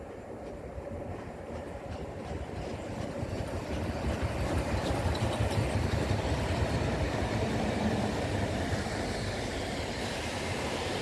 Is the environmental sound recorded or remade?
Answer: remade